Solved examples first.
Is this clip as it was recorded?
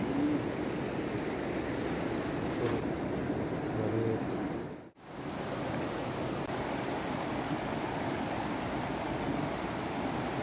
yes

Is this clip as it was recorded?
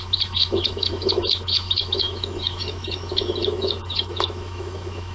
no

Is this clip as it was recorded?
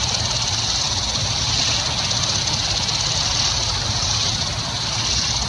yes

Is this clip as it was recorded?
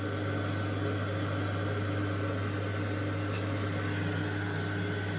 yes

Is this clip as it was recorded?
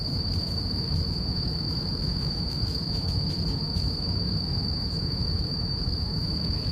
no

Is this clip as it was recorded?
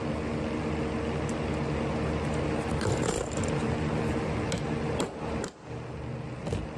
yes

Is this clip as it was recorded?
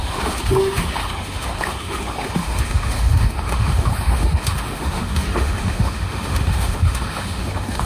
no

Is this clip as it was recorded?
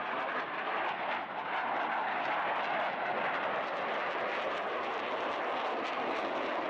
yes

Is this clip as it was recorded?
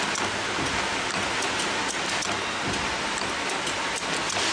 yes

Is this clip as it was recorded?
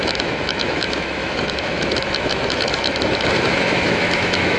no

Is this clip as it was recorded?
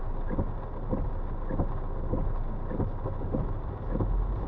yes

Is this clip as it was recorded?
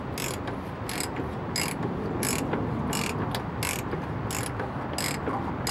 yes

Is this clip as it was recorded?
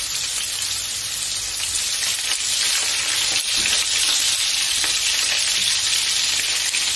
yes